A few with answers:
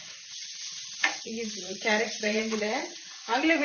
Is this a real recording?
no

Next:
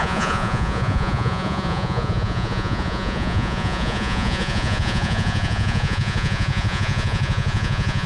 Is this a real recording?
no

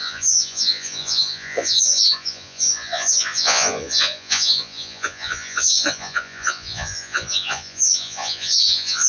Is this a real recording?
no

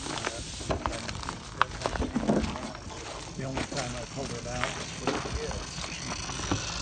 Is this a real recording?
yes